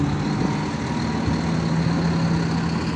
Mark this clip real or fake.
real